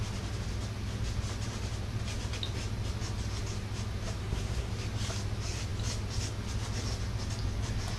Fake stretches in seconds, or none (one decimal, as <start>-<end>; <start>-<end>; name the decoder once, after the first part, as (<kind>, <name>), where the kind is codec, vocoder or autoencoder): 4.2-4.7 (codec, SNAC)